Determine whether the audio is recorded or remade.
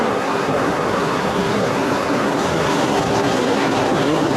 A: remade